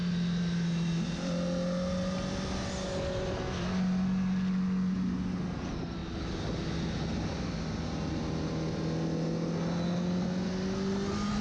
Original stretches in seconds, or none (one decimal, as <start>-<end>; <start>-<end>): 0.0-11.4